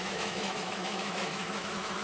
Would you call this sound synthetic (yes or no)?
yes